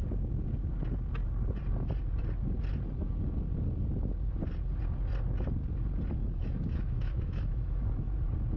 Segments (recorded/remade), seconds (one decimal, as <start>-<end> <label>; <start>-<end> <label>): 0.0-6.2 recorded; 6.2-8.1 remade; 8.1-8.6 recorded